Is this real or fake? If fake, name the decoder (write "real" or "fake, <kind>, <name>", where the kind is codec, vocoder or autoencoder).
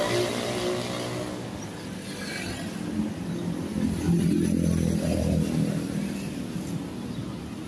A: real